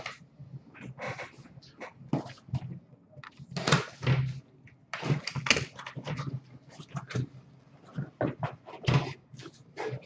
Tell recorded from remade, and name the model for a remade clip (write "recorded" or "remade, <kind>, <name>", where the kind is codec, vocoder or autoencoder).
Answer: recorded